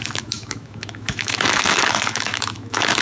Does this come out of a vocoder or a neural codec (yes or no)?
yes